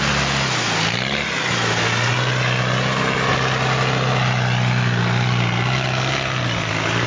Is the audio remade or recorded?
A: recorded